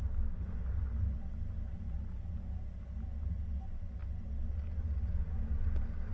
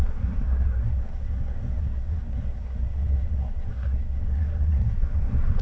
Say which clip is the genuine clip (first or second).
first